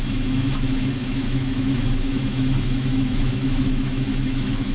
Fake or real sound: fake